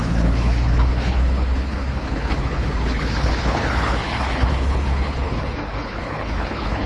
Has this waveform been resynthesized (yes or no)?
yes